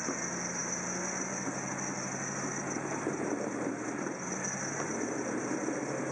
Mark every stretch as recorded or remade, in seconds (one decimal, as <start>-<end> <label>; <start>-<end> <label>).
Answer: 0.0-6.1 recorded

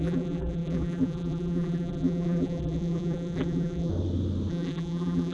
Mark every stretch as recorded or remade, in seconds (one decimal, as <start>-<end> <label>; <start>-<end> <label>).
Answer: 0.0-3.9 remade; 3.9-4.5 recorded; 4.5-5.3 remade

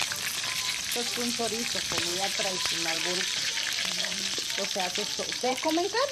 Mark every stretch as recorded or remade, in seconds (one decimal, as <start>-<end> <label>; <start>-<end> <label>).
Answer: 0.0-2.1 recorded; 2.1-6.1 remade

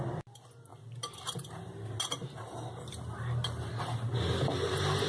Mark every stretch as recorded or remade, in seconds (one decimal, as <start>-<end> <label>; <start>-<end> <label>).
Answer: 0.0-5.1 recorded

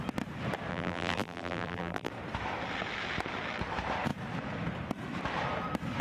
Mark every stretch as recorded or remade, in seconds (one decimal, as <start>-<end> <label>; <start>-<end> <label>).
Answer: 0.0-0.7 recorded; 0.7-2.1 remade; 2.1-6.0 recorded

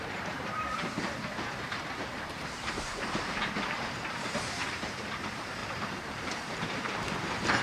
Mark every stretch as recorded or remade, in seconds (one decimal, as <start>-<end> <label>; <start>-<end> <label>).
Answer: 0.0-7.6 remade